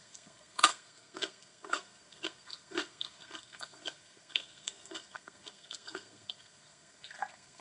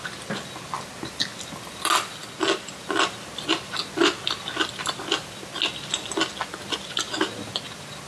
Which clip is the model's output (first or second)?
first